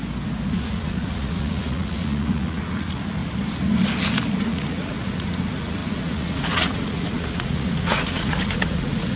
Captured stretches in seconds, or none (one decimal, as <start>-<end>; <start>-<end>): 0.0-0.5; 3.2-4.4

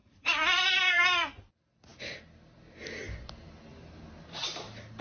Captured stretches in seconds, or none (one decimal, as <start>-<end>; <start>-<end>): 1.5-5.0

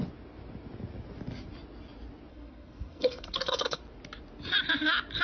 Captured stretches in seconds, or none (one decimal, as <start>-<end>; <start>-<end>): 0.0-2.3; 3.8-5.2

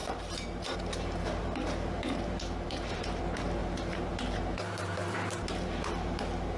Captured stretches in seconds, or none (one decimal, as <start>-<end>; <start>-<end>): 3.2-3.6